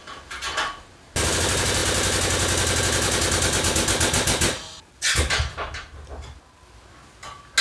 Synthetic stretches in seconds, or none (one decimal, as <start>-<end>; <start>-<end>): none